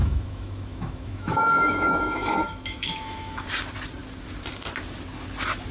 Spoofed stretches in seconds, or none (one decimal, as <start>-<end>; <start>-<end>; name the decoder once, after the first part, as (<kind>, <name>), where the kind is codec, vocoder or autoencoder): 0.0-3.4 (autoencoder, DAC-VAE)